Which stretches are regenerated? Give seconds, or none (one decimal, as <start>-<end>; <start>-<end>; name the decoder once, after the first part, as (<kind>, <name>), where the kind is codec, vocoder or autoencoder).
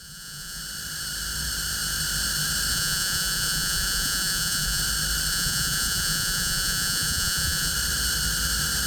0.0-0.6 (vocoder, Vocos); 2.7-4.8; 5.3-7.7